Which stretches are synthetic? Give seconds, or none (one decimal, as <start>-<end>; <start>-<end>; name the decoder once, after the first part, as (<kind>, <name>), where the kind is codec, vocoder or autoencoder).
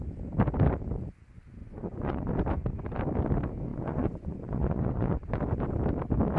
1.6-2.3 (vocoder, Vocos); 3.7-5.4